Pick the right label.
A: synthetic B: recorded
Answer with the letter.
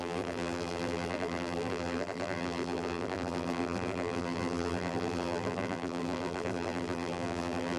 A